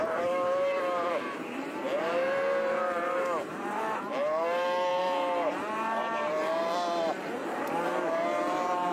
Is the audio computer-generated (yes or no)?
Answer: yes